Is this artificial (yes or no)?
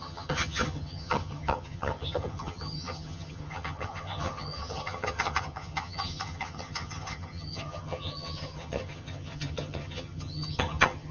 yes